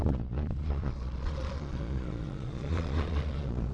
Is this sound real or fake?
fake